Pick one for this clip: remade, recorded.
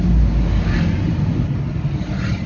recorded